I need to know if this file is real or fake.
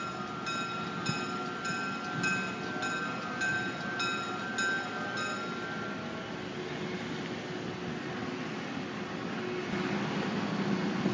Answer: real